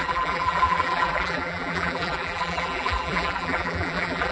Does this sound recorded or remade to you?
remade